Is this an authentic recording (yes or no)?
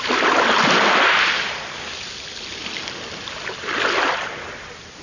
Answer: yes